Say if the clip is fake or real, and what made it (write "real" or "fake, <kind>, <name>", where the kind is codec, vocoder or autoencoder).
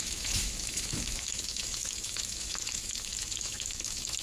fake, autoencoder, DAC-VAE